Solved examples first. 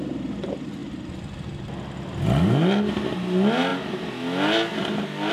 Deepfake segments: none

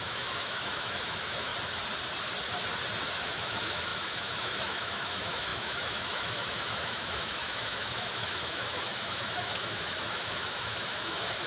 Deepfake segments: 0.0-1.5 (autoencoder, DAC-VAE); 3.2-11.5